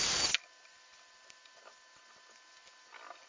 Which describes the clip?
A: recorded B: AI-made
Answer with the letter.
A